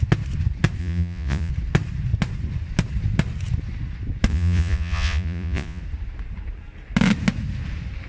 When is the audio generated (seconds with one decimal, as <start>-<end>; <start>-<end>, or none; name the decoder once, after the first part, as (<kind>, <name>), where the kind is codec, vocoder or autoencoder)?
0.8-1.5 (vocoder, Vocos); 4.3-5.8